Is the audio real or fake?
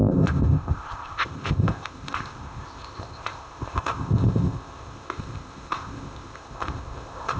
fake